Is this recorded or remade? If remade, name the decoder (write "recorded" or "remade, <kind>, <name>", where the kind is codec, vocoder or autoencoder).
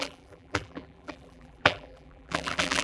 remade, vocoder, BigVGAN v2